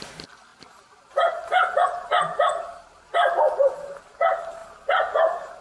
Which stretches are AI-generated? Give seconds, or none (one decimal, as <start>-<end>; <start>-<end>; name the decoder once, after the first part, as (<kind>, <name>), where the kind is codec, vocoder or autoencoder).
none